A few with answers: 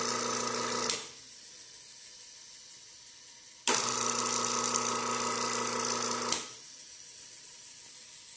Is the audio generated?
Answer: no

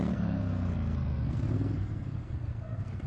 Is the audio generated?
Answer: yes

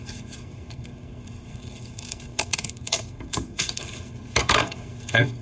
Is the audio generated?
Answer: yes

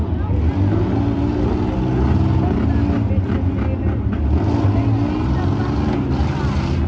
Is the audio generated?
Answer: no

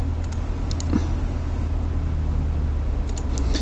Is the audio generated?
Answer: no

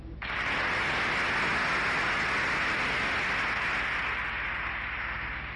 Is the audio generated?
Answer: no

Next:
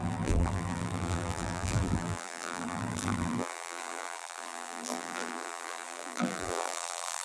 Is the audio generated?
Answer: yes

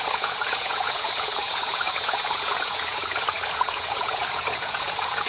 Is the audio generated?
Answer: yes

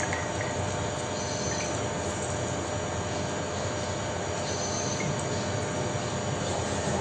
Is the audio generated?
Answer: no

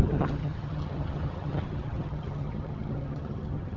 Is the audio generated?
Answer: yes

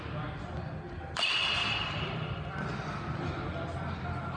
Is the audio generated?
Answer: no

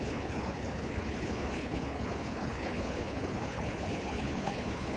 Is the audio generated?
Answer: yes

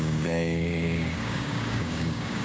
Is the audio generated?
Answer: yes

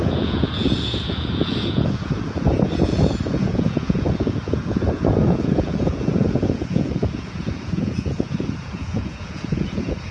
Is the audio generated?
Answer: yes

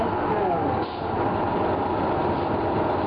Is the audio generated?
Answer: no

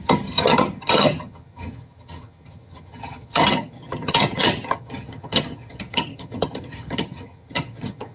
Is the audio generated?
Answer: yes